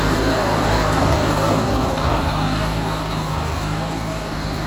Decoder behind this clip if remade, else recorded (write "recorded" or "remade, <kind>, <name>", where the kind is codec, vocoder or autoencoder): remade, codec, DAC